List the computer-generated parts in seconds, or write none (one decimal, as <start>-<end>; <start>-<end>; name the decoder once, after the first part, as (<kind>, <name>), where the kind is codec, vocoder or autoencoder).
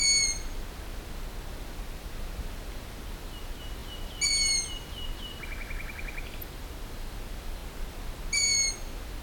none